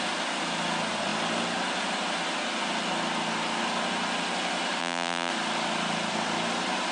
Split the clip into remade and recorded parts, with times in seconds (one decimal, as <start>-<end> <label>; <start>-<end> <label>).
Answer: 0.0-4.8 recorded; 4.8-5.3 remade; 5.3-6.9 recorded